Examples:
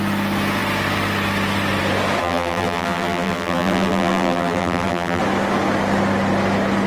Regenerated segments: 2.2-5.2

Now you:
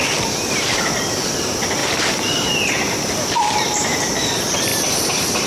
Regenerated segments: 0.0-4.7

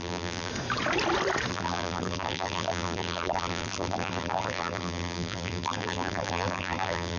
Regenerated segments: 0.0-0.5; 1.5-7.2

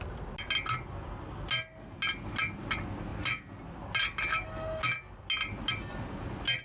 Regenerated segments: none

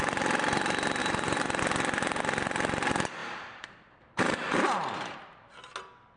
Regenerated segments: 1.0-1.6; 3.2-5.5

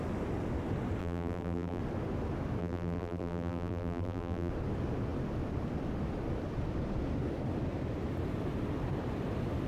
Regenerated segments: 1.0-1.8; 2.6-4.5

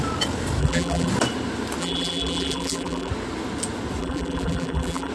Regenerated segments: 0.6-1.1; 1.8-3.1; 4.0-5.1

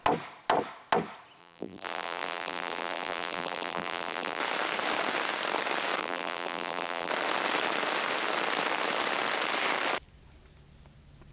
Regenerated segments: 1.4-4.4; 6.0-7.1